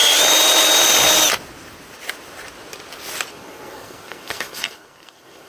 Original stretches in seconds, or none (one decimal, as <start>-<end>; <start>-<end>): 0.0-3.3